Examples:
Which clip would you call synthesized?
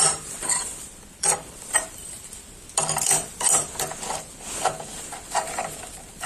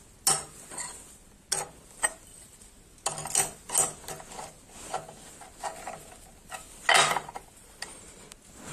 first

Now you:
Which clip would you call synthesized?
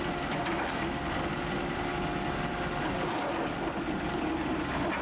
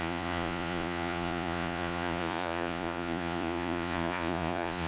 second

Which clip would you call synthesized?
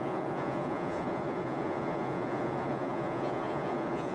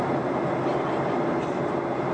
first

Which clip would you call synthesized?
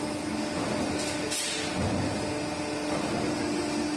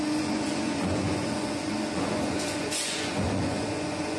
second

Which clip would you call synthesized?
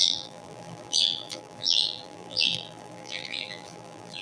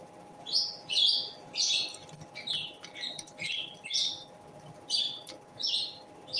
first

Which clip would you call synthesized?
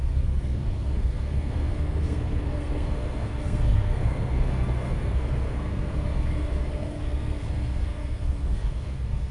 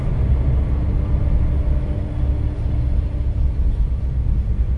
first